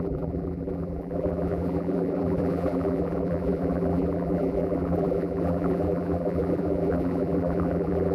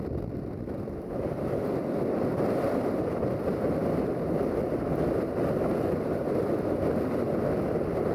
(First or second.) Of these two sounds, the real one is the second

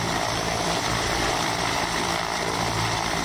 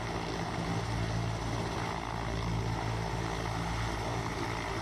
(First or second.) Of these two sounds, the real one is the second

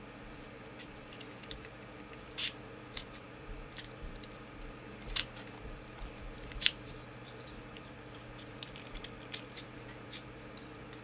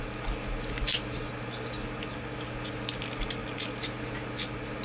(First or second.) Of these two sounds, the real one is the second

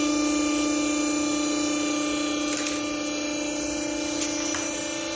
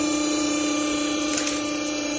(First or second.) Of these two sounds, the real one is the first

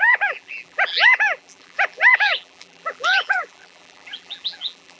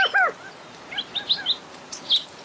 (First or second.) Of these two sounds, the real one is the second